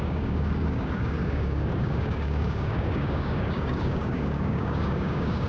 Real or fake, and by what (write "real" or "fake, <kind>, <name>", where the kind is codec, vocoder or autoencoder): fake, codec, DAC